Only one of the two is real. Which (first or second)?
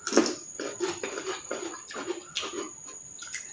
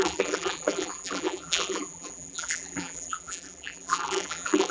first